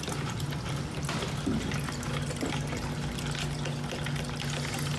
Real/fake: real